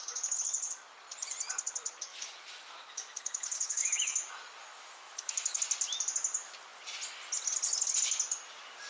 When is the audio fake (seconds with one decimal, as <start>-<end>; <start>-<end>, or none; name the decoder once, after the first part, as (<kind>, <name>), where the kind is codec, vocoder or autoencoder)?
2.1-4.3 (autoencoder, DAC-VAE); 4.7-5.6